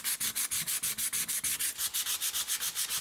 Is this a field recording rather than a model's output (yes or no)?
no